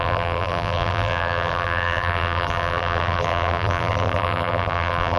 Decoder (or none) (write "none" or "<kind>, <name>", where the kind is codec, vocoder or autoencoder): vocoder, BigVGAN v2